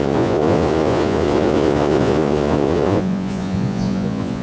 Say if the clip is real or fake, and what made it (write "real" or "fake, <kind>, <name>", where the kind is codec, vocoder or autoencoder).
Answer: fake, vocoder, Vocos